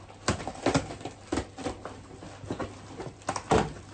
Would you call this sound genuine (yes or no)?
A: yes